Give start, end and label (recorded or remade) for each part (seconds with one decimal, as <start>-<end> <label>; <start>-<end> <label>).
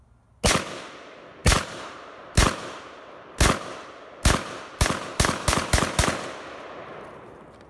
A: 0.0-1.4 recorded; 1.4-3.0 remade; 3.0-7.7 recorded